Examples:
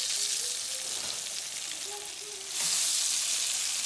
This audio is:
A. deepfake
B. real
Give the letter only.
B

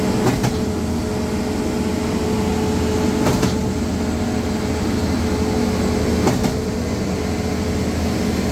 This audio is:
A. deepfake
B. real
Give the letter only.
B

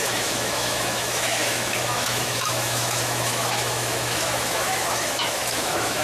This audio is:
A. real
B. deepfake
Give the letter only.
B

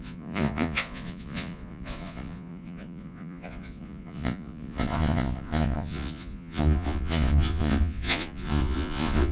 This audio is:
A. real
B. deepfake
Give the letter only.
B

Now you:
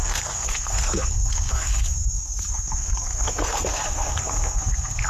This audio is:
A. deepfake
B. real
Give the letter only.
A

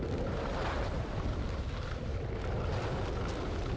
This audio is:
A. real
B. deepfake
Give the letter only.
A